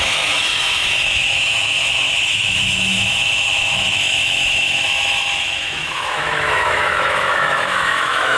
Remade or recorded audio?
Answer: remade